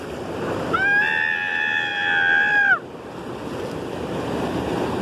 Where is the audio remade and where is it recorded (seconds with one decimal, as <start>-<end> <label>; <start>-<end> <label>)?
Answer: 0.0-5.0 recorded